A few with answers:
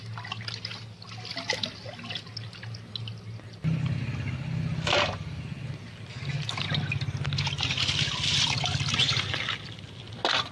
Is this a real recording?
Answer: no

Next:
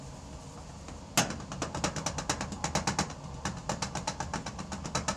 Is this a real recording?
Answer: yes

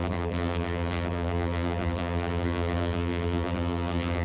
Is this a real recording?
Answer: no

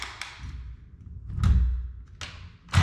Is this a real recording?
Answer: yes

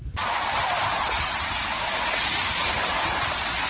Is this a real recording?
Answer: yes